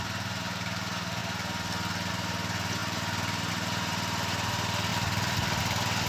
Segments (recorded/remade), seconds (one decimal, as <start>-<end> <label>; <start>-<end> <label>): 0.0-1.2 remade; 1.2-2.1 recorded; 2.1-4.9 remade; 4.9-5.6 recorded; 5.6-6.1 remade